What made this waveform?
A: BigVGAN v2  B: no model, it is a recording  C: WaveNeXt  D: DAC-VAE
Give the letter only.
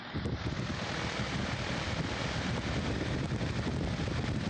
B